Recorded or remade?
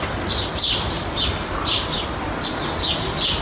recorded